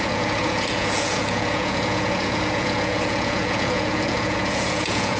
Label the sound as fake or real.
fake